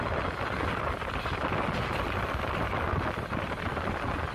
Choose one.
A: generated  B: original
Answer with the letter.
B